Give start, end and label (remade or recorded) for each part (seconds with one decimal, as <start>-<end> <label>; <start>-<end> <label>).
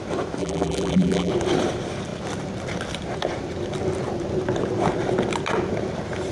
0.0-0.4 recorded; 0.4-1.3 remade; 1.3-6.3 recorded